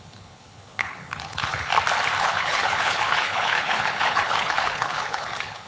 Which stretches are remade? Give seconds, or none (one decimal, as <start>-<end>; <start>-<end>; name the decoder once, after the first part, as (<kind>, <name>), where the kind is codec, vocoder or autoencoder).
0.0-1.7 (codec, HILCodec); 2.2-5.7